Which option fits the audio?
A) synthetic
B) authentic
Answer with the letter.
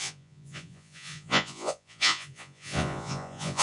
A